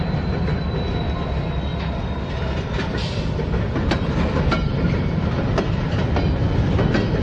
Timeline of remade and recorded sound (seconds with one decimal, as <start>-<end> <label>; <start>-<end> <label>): 0.0-1.7 recorded; 1.7-6.0 remade; 6.0-7.2 recorded